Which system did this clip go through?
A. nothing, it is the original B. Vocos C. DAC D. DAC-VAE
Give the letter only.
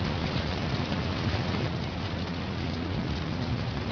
B